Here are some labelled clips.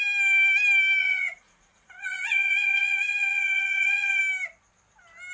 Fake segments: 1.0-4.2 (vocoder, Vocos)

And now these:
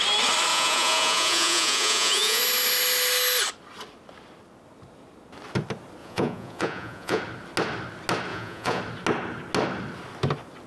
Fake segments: 0.5-2.4 (vocoder, Vocos); 6.0-7.2; 8.3-8.8

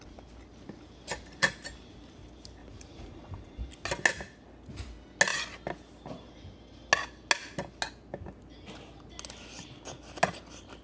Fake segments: 2.6-3.6 (vocoder, Vocos)